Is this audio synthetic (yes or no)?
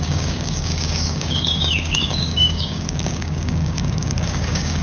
yes